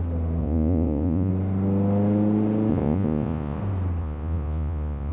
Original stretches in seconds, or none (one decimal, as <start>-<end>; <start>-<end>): 0.0-0.4; 1.3-2.7; 3.6-4.0